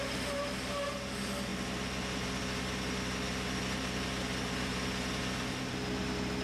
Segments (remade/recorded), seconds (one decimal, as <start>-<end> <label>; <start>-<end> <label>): 0.0-6.4 recorded